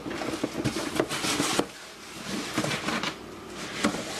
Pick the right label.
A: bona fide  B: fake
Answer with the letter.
A